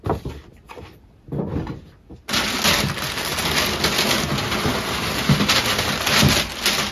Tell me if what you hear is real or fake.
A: real